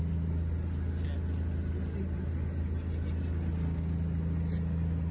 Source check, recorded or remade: recorded